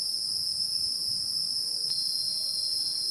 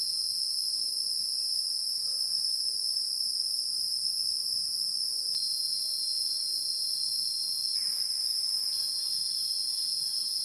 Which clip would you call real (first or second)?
second